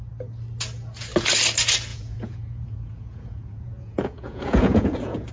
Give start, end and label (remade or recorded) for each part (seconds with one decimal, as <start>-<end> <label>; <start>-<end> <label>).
0.0-1.9 recorded; 1.9-5.3 remade